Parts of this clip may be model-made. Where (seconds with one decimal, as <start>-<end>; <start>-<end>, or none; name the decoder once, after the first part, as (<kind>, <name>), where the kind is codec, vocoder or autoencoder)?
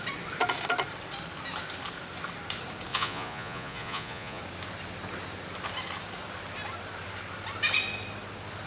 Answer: 2.9-4.4 (vocoder, Vocos)